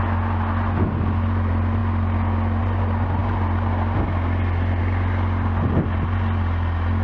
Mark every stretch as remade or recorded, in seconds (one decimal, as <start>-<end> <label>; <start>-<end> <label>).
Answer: 0.0-7.0 recorded